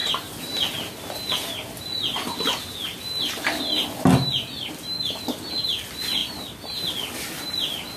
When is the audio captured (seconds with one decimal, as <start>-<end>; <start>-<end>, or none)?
0.0-8.0